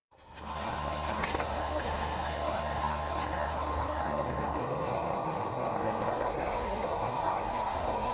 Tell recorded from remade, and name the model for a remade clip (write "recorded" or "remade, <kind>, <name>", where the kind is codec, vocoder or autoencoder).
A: remade, codec, SNAC